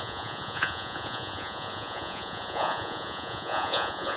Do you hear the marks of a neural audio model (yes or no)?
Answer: yes